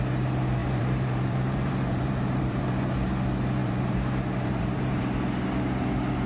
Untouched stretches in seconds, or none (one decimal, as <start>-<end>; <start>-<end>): 0.0-0.6; 2.6-3.6; 5.0-6.3